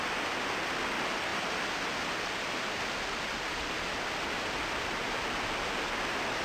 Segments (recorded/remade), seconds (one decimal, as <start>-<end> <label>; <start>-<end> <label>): 0.0-6.4 recorded